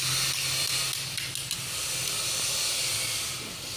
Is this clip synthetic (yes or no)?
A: no